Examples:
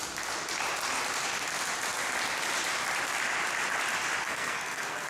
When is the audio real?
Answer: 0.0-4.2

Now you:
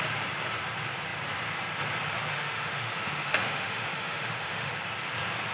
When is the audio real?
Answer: 0.0-2.3; 4.7-5.5